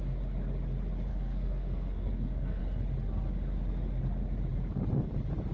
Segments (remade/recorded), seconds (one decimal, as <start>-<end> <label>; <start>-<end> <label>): 0.0-1.1 recorded; 1.1-2.6 remade; 2.6-5.5 recorded